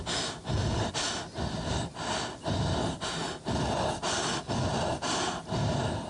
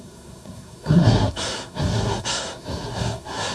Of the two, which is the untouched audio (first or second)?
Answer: first